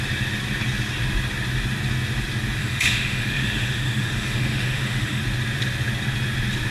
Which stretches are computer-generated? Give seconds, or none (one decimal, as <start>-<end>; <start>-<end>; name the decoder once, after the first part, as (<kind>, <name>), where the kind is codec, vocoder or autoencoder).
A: 2.6-5.2 (autoencoder, DAC-VAE)